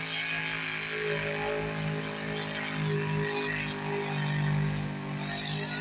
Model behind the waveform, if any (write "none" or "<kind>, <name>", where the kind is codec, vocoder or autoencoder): none